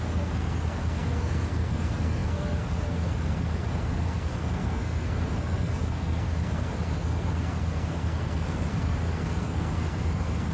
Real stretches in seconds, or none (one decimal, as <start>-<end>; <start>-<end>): none